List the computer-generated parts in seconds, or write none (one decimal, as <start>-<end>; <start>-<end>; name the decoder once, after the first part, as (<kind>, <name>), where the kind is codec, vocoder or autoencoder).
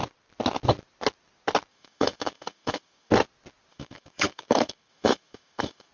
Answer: 1.7-3.1 (autoencoder, DAC-VAE); 3.7-5.9